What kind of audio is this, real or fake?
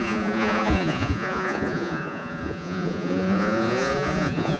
fake